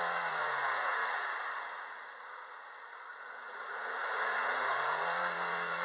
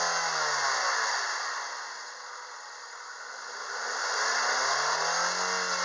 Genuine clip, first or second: second